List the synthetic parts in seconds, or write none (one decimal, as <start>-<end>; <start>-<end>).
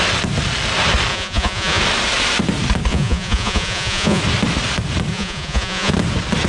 1.1-1.8; 2.9-4.2; 5.1-5.9